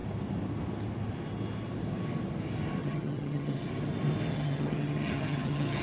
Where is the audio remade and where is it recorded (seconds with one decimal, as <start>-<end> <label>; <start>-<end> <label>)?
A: 0.0-2.8 recorded; 2.8-3.7 remade; 3.7-4.3 recorded; 4.3-5.8 remade